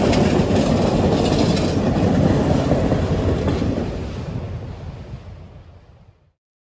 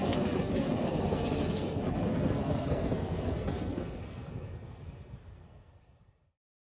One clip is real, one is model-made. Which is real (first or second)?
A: first